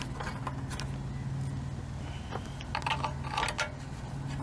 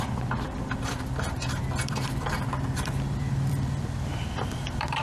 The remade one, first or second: second